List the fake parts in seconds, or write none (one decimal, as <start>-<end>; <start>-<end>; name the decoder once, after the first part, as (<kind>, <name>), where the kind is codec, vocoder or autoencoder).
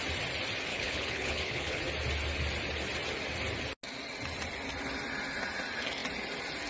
0.7-1.8 (codec, HILCodec)